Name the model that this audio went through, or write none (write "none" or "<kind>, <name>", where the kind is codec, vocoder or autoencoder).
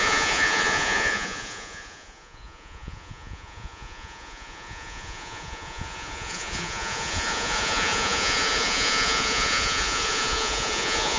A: vocoder, Vocos